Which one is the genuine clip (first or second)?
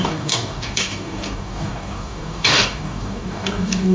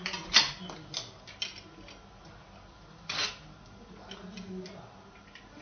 second